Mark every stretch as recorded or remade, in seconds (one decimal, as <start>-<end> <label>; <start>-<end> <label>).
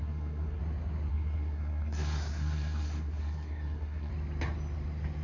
0.0-0.6 remade; 0.6-1.1 recorded; 1.1-4.1 remade; 4.1-5.2 recorded